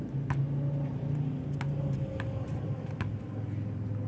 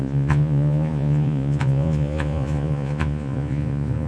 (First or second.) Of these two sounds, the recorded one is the first